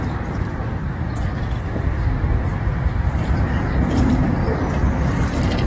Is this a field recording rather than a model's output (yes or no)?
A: no